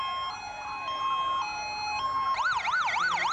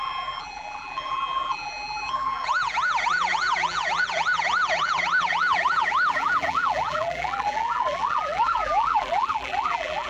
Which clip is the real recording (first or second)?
first